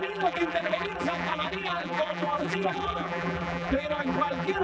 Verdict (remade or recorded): remade